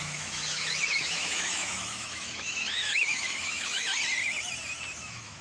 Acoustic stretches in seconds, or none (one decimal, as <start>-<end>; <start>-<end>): 3.9-5.0